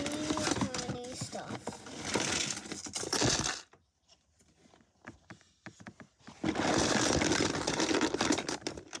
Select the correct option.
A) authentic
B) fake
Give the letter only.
A